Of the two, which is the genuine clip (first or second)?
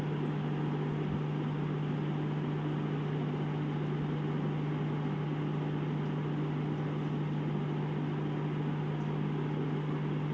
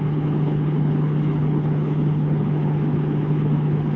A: first